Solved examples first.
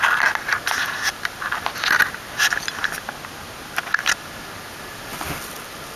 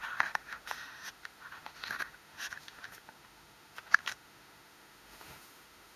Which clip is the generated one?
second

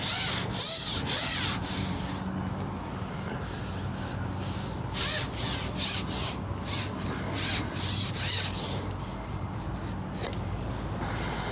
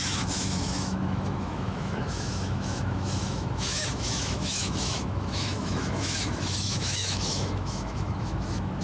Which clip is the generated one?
second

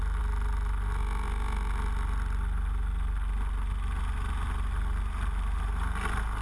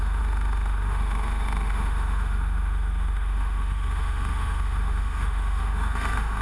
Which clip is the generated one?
second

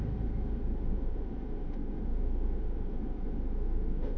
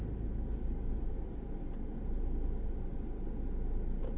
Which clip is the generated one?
first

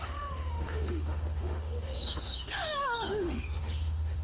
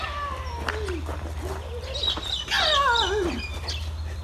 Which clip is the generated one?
first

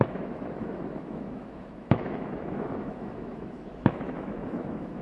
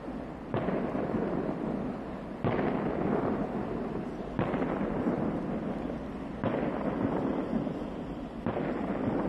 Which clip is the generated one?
first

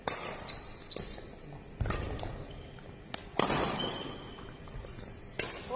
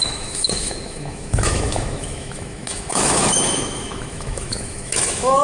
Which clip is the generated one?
second